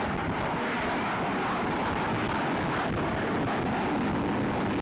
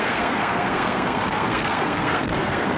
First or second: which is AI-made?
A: second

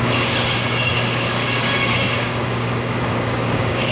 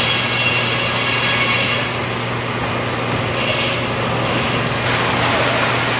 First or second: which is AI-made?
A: first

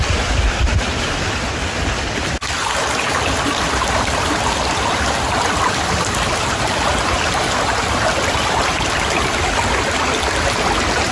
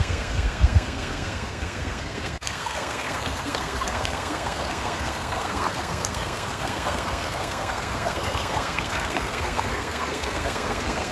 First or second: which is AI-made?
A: second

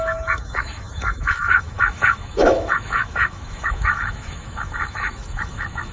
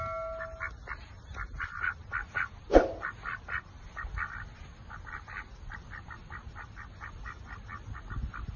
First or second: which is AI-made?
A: first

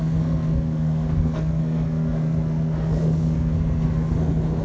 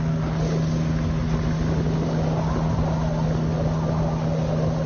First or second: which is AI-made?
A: first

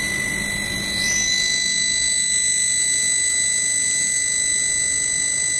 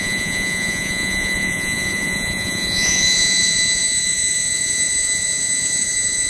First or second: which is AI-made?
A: second